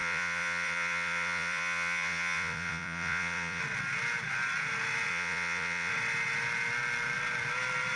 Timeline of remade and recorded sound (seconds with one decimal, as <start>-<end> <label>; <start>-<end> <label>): 0.0-3.6 remade; 3.6-5.1 recorded; 5.1-5.9 remade; 5.9-8.0 recorded

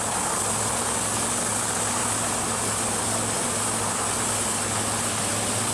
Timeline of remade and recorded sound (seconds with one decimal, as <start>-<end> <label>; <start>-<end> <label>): 0.0-5.7 recorded

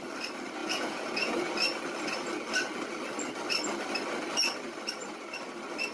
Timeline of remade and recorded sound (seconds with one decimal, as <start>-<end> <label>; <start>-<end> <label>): 0.0-0.6 recorded; 0.6-1.5 remade; 1.5-5.9 recorded

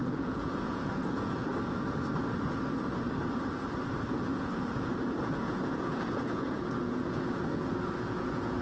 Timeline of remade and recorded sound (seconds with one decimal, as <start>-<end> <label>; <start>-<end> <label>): 0.0-1.5 remade; 1.5-4.1 recorded; 4.1-8.6 remade

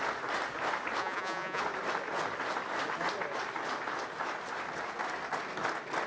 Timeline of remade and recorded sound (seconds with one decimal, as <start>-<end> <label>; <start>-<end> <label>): 0.0-1.0 recorded; 1.0-1.6 remade; 1.6-6.1 recorded